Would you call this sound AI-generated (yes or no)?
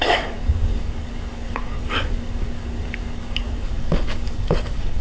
yes